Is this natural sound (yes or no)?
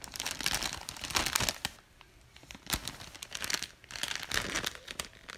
yes